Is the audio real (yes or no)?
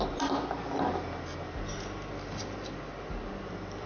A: no